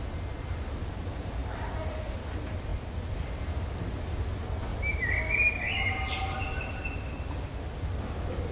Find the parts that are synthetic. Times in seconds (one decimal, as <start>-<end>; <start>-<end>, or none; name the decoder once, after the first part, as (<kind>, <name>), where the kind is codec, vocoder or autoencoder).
1.4-2.2 (vocoder, BigVGAN v2); 4.7-6.6